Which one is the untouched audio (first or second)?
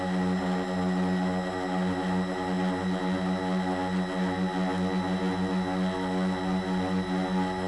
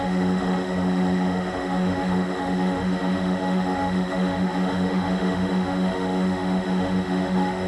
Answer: first